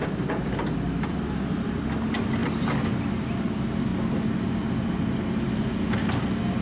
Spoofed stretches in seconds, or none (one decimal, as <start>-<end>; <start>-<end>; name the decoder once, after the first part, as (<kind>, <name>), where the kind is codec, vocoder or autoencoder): none

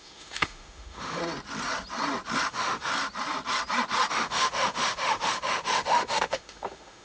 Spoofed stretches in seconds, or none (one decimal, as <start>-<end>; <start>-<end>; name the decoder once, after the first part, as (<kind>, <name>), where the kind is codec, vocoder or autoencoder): 0.0-1.2 (autoencoder, DAC-VAE); 2.5-2.9; 4.1-7.0